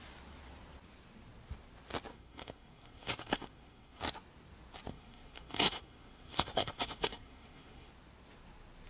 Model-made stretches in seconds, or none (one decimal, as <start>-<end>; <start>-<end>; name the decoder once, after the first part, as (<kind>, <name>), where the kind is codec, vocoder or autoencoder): 2.1-4.0 (codec, SNAC); 4.9-7.9